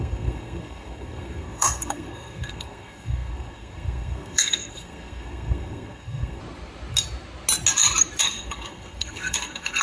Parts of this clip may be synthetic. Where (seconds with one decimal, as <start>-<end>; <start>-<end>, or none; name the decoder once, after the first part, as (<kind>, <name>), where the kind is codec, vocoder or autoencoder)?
0.0-6.4 (codec, SNAC); 8.2-9.8

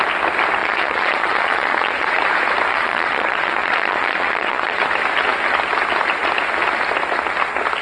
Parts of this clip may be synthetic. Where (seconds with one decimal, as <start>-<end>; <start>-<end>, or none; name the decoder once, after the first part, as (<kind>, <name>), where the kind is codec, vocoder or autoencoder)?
0.6-2.2 (vocoder, Vocos); 2.7-4.8